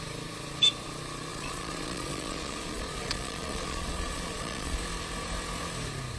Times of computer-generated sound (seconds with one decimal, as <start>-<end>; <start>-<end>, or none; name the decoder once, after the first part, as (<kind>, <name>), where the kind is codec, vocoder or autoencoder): 1.3-4.8 (vocoder, Vocos)